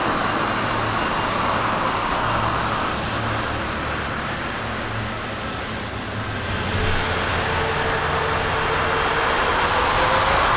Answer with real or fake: real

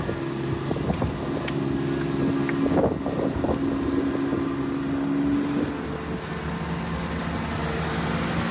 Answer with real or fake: real